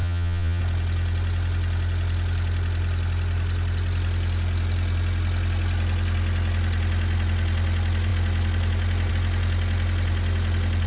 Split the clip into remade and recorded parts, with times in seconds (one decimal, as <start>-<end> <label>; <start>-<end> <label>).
0.0-0.6 remade; 0.6-10.9 recorded